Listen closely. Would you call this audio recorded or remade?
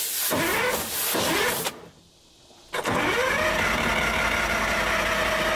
recorded